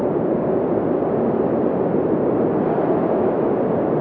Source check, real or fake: real